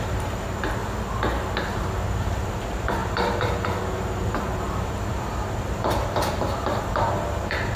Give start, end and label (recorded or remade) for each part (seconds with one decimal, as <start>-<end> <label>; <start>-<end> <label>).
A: 0.0-0.8 remade; 0.8-1.6 recorded; 1.6-7.8 remade

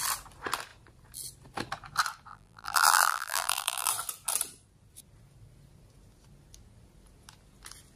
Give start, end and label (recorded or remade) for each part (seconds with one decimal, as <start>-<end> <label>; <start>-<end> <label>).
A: 0.0-2.3 recorded; 2.3-3.9 remade; 3.9-8.0 recorded

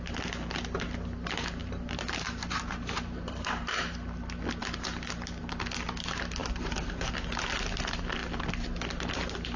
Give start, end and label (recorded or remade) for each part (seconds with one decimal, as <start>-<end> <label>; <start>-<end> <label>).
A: 0.0-1.6 recorded; 1.6-3.9 remade; 3.9-6.4 recorded; 6.4-7.1 remade; 7.1-9.6 recorded

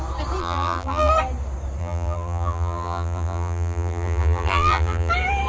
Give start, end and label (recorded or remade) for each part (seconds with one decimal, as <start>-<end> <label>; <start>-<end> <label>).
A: 0.0-0.4 recorded; 0.4-1.1 remade; 1.1-1.8 recorded; 1.8-5.1 remade; 5.1-5.5 recorded

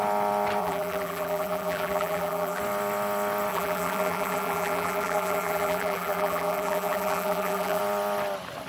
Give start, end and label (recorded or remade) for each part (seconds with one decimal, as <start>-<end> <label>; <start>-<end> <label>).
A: 0.0-0.6 recorded; 0.6-2.6 remade; 2.6-3.5 recorded; 3.5-7.8 remade; 7.8-8.7 recorded

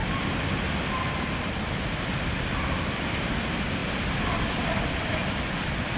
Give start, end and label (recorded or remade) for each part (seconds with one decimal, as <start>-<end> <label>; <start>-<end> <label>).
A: 0.0-2.5 recorded; 2.5-6.0 remade

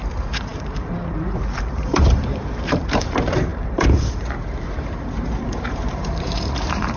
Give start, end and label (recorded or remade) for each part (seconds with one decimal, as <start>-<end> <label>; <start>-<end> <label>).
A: 0.0-7.0 remade